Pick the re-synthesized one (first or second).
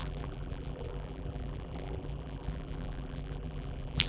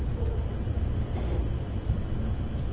first